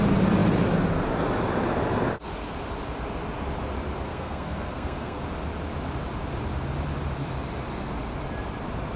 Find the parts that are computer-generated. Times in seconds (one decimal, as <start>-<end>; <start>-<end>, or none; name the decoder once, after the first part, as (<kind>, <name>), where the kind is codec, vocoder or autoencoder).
4.1-5.2 (codec, SNAC)